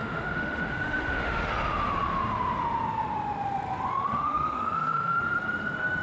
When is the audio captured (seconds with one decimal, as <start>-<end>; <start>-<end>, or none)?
1.5-3.9; 5.2-6.0